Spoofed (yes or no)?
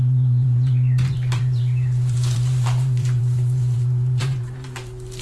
yes